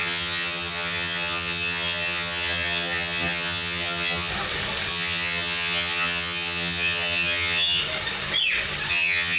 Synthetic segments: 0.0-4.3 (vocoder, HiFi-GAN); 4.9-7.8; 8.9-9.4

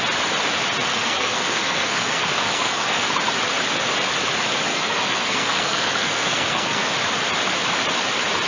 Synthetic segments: 0.9-3.1 (codec, SNAC); 4.7-6.9

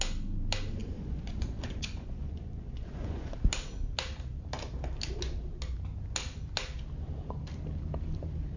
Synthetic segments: 0.8-3.3 (vocoder, Vocos)

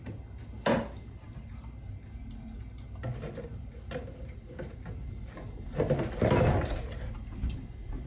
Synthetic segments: none

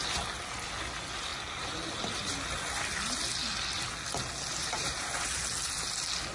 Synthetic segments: 4.5-5.4 (vocoder, BigVGAN v2)